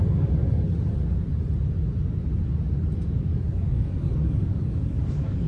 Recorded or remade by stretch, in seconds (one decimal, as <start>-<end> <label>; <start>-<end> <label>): 0.0-0.4 remade; 0.4-3.1 recorded; 3.1-5.5 remade